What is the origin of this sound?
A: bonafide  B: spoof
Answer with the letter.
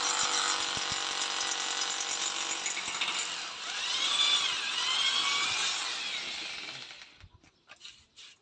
A